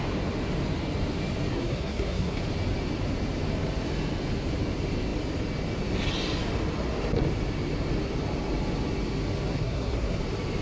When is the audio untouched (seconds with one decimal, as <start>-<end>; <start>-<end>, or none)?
0.0-1.5; 2.4-9.5; 10.2-10.6